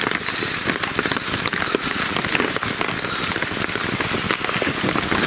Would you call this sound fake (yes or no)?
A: no